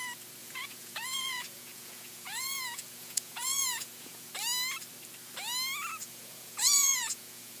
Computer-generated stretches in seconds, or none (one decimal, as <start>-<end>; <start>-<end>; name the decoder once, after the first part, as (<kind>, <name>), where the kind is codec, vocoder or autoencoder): 0.4-4.3 (vocoder, Vocos); 6.0-7.6

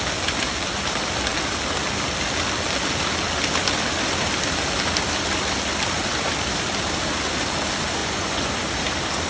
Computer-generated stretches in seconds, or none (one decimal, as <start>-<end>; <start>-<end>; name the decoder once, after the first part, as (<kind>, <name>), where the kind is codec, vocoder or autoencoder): 8.0-8.5 (vocoder, Vocos)

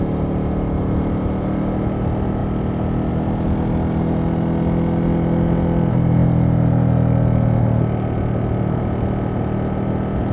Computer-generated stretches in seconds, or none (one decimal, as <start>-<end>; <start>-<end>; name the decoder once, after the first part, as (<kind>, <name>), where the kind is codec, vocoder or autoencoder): none

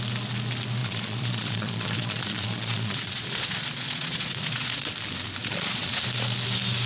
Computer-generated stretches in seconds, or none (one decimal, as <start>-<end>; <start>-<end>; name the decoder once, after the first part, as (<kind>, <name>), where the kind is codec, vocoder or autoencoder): 0.8-4.9 (vocoder, Vocos); 5.4-6.0

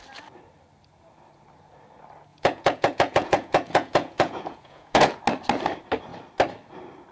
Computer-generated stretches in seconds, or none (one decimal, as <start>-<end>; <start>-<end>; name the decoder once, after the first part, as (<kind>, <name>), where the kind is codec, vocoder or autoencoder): 2.3-5.2 (vocoder, Vocos)

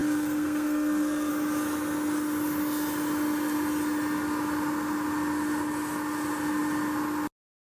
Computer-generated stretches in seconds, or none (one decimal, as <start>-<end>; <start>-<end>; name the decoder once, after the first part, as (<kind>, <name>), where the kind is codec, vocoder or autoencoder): 0.0-1.3 (codec, SNAC)

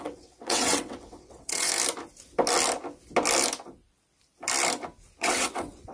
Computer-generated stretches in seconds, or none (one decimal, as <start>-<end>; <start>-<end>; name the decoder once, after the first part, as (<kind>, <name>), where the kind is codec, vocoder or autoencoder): 0.0-1.7 (vocoder, WaveNeXt); 5.2-5.9

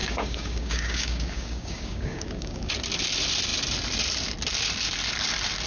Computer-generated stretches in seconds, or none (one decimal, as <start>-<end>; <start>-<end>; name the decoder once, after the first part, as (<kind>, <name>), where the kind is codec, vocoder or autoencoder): 0.0-2.7 (codec, DAC)